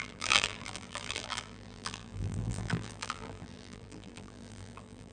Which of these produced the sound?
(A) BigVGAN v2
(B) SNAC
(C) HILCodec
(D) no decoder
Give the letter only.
A